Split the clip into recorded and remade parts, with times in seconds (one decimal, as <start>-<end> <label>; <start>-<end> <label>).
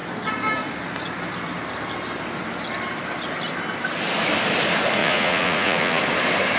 0.0-5.0 recorded; 5.0-6.0 remade; 6.0-6.6 recorded